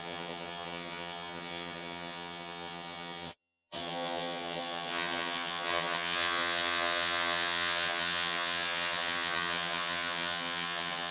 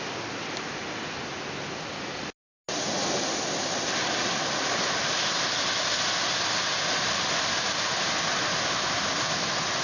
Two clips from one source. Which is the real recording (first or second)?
second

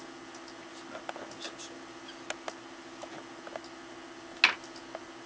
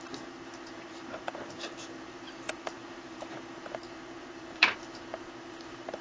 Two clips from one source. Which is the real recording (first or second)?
first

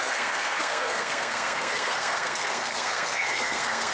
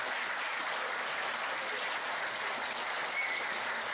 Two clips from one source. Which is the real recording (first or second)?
second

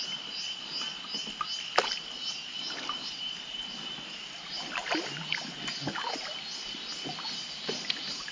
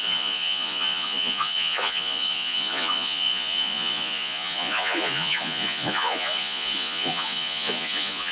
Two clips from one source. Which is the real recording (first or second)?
first